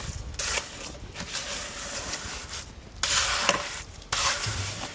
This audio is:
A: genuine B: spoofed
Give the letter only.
A